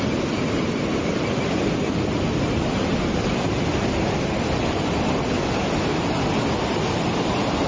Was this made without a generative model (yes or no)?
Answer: yes